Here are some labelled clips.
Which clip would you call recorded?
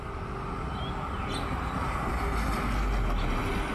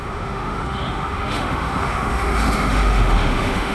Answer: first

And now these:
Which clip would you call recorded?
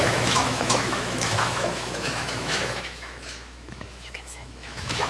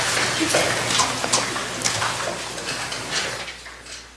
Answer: second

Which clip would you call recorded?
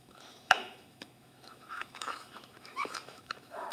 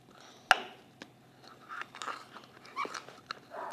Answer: second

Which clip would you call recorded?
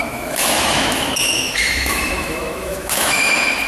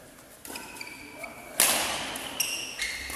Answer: second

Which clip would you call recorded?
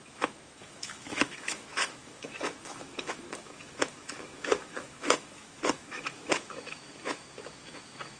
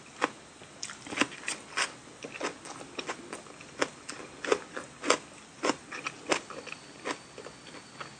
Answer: second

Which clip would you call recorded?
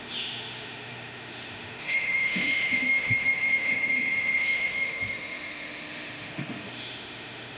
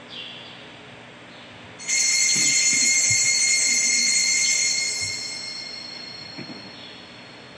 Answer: second